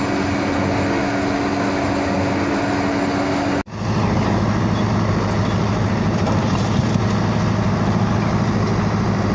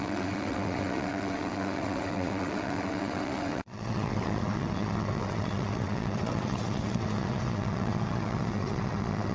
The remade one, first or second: second